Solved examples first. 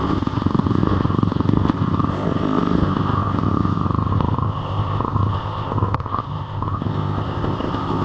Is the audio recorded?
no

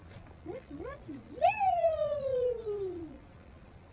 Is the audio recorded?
no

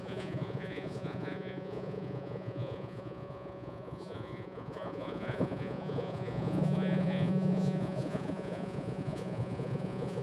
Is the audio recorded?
no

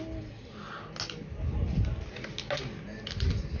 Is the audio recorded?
yes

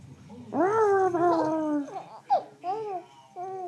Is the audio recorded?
yes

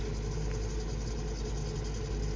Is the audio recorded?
yes